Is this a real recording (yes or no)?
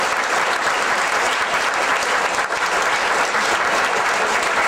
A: yes